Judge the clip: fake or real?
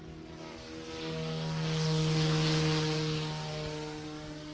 real